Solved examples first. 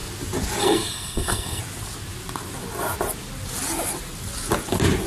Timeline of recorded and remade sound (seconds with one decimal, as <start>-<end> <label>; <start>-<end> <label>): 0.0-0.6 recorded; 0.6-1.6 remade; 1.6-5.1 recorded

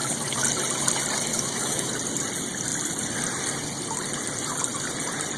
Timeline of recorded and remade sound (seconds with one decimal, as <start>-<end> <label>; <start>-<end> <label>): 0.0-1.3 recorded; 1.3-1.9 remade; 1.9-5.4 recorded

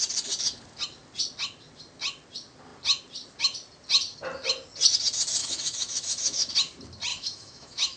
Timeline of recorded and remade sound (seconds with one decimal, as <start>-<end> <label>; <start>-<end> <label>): 0.0-5.4 recorded; 5.4-6.5 remade; 6.5-7.1 recorded; 7.1-8.0 remade

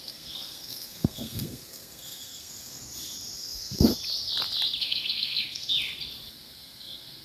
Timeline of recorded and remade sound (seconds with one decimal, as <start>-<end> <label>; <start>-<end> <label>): 0.0-2.8 remade; 2.8-3.4 recorded; 3.4-3.9 remade; 3.9-4.8 recorded; 4.8-5.7 remade; 5.7-6.3 recorded; 6.3-7.2 remade

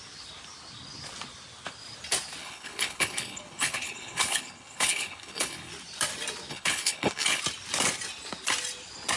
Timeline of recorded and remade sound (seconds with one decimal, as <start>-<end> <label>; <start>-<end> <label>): 0.0-2.4 recorded; 2.4-5.7 remade; 5.7-6.5 recorded; 6.5-7.4 remade; 7.4-9.2 recorded

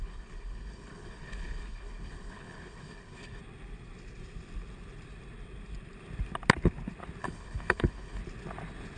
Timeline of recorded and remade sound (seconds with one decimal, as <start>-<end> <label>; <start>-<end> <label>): 0.0-3.4 remade; 3.4-7.2 recorded; 7.2-8.2 remade; 8.2-9.0 recorded